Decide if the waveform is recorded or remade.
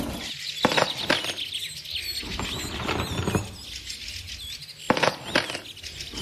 recorded